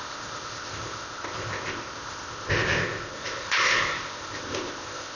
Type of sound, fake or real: fake